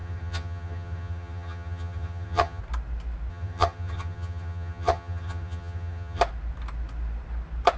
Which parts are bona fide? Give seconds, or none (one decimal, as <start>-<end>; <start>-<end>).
2.6-3.3; 6.2-7.8